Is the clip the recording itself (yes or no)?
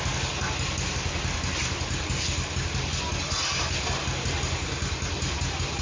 yes